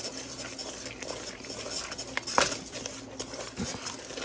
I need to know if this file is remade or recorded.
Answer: recorded